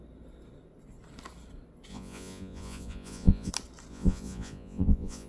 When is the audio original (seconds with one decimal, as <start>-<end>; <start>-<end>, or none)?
0.0-1.9; 3.5-3.9